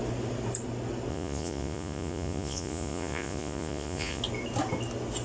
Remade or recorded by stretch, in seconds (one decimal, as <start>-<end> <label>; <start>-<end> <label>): 0.0-1.1 recorded; 1.1-4.2 remade; 4.2-5.2 recorded

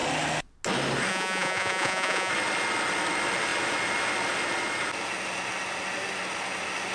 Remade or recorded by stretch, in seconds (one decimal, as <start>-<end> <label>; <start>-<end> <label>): 0.0-1.1 recorded; 1.1-2.3 remade; 2.3-6.9 recorded

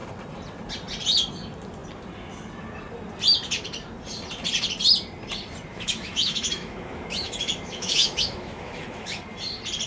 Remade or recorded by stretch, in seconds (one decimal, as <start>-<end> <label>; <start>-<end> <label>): 0.0-5.7 recorded; 5.7-9.2 remade; 9.2-9.9 recorded

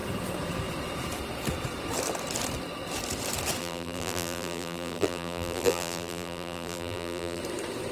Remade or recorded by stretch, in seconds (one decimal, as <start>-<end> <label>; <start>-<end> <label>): 0.0-3.6 recorded; 3.6-7.4 remade; 7.4-7.9 recorded

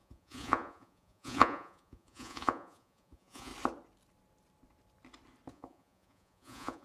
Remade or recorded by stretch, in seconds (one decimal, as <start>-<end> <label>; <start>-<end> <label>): 0.0-3.5 remade; 3.5-5.5 recorded; 5.5-6.8 remade

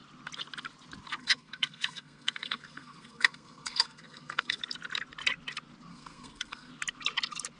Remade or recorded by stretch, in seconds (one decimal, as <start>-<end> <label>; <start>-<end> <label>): 0.0-1.2 recorded; 1.2-4.6 remade; 4.6-5.9 recorded; 5.9-6.7 remade; 6.7-7.6 recorded

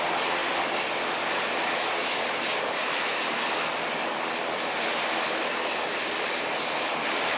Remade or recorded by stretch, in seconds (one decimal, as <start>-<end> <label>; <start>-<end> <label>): 0.0-7.4 recorded

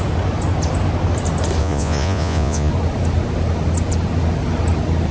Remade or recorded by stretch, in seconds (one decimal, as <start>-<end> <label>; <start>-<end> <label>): 0.0-1.6 recorded; 1.6-2.7 remade; 2.7-5.1 recorded